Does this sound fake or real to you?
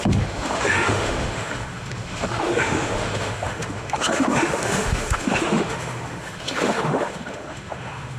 fake